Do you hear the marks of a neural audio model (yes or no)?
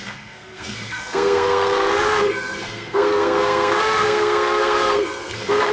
yes